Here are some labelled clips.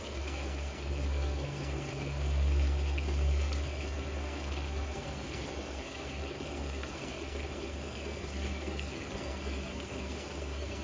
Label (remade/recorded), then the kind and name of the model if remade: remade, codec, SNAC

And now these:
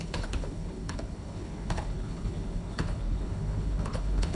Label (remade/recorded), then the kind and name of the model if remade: remade, codec, HILCodec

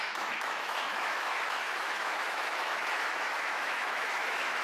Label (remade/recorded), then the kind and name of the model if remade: remade, autoencoder, DAC-VAE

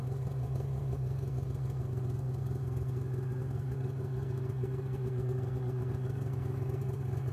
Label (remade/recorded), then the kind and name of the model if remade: remade, codec, SNAC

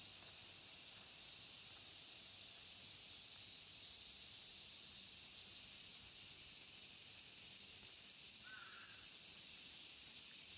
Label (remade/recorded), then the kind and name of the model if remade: recorded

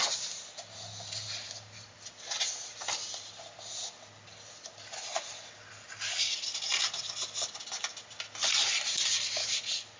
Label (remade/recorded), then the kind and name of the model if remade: recorded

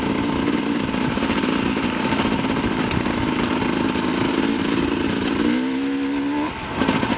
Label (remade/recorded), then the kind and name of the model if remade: recorded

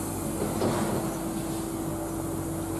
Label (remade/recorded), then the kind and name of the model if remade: recorded